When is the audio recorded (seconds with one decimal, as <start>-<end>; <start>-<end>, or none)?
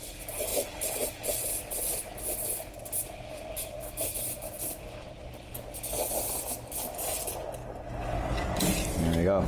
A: 1.9-6.8; 7.6-8.3